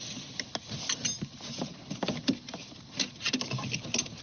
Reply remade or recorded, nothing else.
recorded